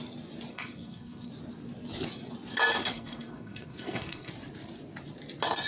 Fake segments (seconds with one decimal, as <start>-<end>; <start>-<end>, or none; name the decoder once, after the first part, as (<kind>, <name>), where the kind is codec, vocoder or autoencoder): 0.5-1.3 (codec, SNAC); 2.9-4.3